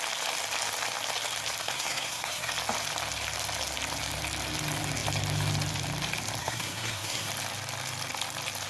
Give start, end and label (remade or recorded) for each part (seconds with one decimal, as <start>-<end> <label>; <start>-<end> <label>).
0.0-1.6 recorded; 1.6-2.5 remade; 2.5-6.4 recorded; 6.4-7.3 remade; 7.3-8.7 recorded